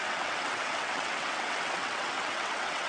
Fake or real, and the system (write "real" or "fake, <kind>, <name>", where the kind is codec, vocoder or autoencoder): fake, vocoder, WaveNeXt